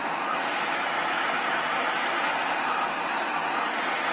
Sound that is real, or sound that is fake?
real